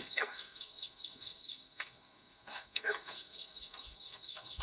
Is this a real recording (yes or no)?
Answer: no